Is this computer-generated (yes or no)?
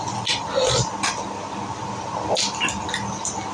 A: no